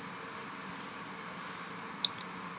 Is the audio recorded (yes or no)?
yes